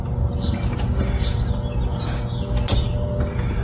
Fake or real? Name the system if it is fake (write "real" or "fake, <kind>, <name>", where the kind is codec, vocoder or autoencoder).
real